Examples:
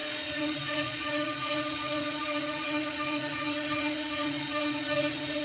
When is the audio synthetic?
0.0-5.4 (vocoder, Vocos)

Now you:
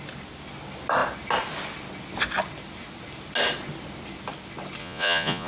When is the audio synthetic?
4.8-5.5 (vocoder, Vocos)

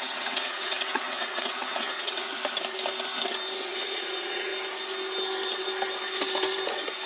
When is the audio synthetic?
0.0-2.3 (vocoder, WaveNeXt); 3.6-4.5

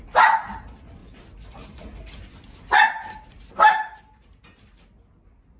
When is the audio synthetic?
none

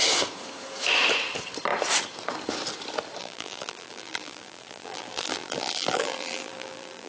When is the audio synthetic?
3.2-7.1 (vocoder, BigVGAN v2)

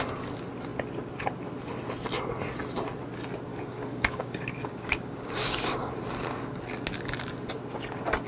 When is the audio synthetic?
3.5-5.9 (codec, DAC)

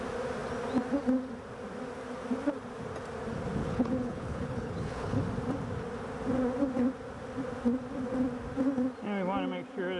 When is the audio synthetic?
3.6-5.2 (codec, HILCodec)